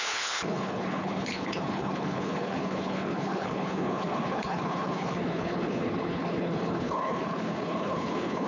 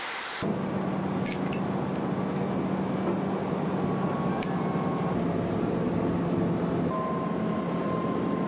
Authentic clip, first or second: second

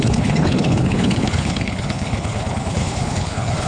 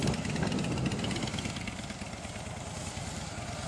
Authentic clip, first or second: second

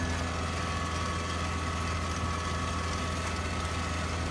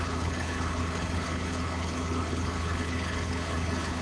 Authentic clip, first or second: first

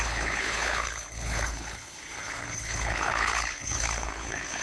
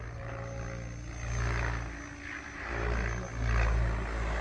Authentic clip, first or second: second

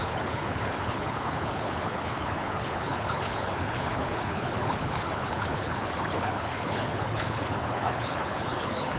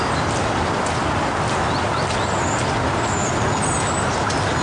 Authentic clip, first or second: second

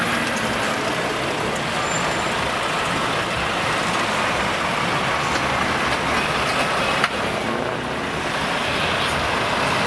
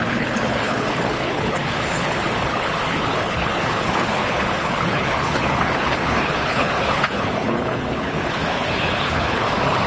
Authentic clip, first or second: first